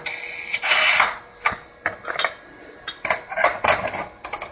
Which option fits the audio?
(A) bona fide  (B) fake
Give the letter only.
A